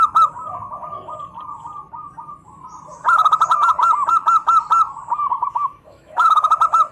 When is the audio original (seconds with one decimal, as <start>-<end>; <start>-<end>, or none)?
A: 0.0-5.3; 6.5-6.9